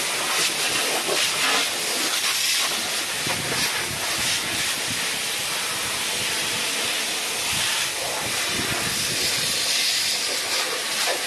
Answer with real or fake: real